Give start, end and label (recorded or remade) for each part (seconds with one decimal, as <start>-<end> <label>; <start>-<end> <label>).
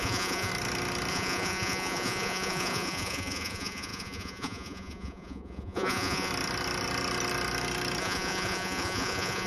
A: 0.0-0.5 remade; 0.5-1.1 recorded; 1.1-6.3 remade; 6.3-8.0 recorded; 8.0-9.5 remade